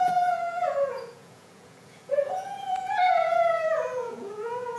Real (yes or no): no